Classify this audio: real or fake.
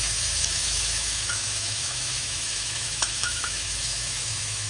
fake